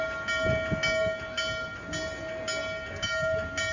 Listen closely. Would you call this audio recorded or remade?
recorded